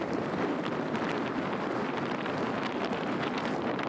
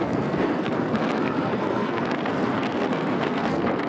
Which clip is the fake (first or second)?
second